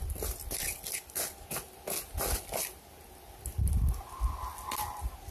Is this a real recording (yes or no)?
yes